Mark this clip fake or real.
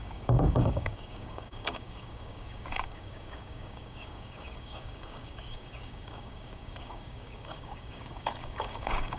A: fake